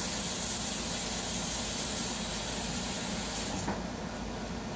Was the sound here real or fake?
real